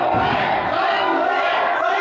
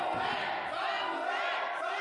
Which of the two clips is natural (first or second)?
second